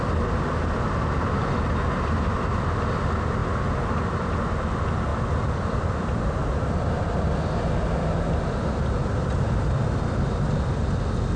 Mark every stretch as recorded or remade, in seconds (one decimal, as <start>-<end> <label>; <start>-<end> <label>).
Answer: 0.0-5.1 recorded; 5.1-6.2 remade; 6.2-11.4 recorded